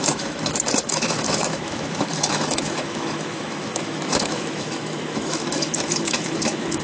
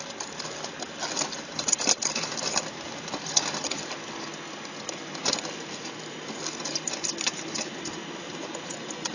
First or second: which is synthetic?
first